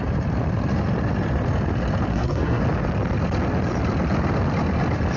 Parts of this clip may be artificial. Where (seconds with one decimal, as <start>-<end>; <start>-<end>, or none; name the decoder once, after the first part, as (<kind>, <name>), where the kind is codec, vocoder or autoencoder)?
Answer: 2.1-2.6 (codec, SNAC)